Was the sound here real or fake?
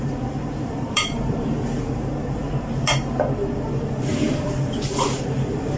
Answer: fake